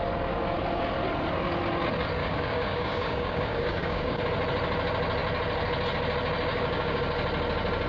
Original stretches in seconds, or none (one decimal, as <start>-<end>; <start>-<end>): 0.0-2.2; 4.2-6.5; 7.0-7.9